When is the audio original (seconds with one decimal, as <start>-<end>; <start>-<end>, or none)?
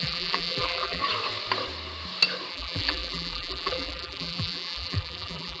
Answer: 1.0-2.5